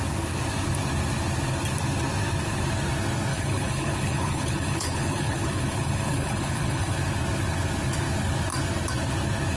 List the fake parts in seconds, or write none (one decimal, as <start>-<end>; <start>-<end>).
3.3-7.0